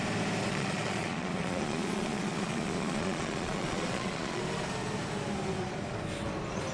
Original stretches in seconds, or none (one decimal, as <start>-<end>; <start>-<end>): 0.0-0.4; 4.4-6.7

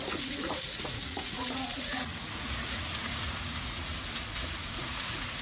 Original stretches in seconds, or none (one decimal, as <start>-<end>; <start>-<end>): 3.9-4.7

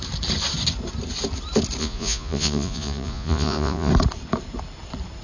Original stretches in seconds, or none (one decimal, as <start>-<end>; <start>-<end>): 0.0-1.8; 3.9-5.2

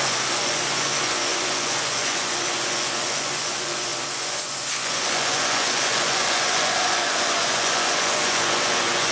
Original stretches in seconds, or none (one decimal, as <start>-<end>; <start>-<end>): none

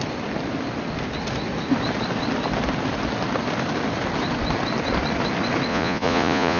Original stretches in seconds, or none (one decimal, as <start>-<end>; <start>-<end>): 0.0-5.7